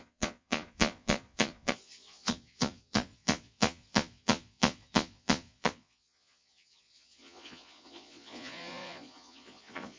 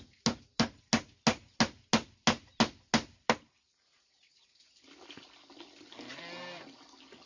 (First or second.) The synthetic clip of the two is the first